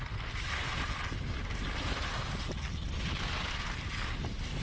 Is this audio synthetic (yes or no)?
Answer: no